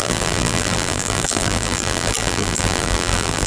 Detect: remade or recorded remade